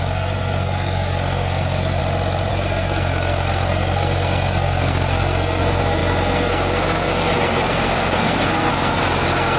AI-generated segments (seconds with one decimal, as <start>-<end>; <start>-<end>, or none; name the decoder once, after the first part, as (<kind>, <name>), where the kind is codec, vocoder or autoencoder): 0.0-2.0 (codec, SNAC); 2.5-9.6